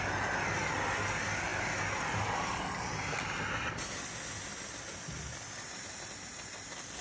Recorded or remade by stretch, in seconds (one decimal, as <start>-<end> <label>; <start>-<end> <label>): 0.0-7.0 recorded